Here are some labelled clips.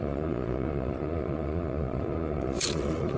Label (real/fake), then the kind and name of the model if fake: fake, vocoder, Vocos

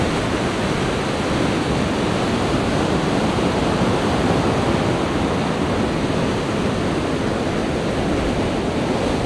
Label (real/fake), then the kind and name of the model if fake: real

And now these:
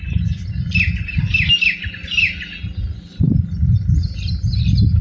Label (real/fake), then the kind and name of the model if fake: real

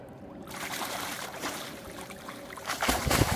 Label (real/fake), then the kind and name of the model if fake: fake, vocoder, BigVGAN v2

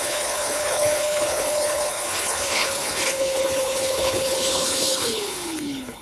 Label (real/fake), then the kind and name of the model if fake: fake, codec, HILCodec